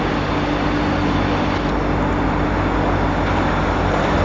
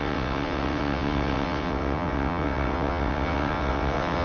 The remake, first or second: second